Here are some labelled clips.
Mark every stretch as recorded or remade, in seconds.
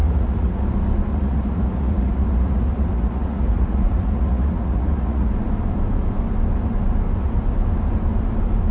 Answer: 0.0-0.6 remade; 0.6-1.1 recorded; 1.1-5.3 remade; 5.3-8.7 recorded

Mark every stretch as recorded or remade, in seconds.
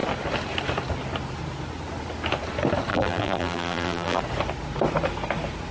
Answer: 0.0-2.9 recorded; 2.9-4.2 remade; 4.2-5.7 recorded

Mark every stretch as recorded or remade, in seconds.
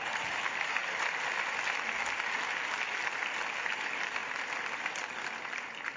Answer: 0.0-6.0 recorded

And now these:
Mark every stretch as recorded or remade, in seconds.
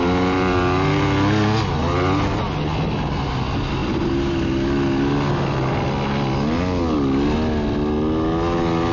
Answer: 0.0-8.9 recorded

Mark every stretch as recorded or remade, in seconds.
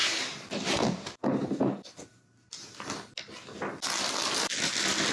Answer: 0.0-3.1 remade; 3.1-5.1 recorded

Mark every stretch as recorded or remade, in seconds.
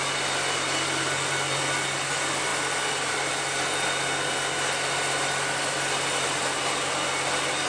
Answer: 0.0-7.7 recorded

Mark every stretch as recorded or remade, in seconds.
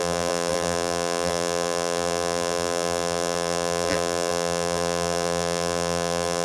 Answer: 0.0-6.4 remade